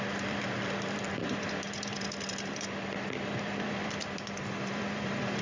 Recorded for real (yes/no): no